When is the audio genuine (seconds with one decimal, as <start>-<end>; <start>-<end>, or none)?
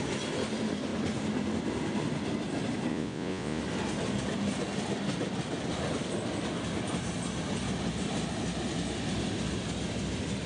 0.0-2.9; 3.6-10.5